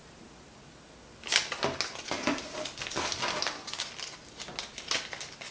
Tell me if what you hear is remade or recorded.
recorded